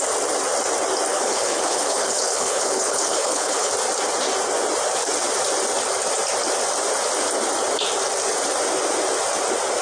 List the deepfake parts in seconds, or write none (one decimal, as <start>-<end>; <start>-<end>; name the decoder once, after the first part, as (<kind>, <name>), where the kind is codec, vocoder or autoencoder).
1.1-3.7 (codec, HILCodec)